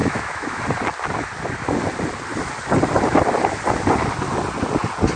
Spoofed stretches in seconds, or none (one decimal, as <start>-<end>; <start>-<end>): 0.0-0.6